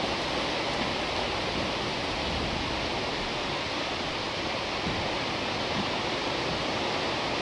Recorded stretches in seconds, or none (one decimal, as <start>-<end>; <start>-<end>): 0.0-2.9; 4.6-7.4